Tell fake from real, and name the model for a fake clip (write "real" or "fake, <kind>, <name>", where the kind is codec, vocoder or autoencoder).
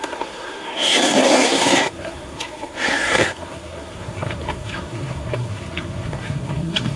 fake, codec, SNAC